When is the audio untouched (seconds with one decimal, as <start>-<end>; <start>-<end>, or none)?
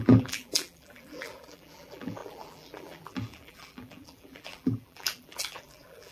none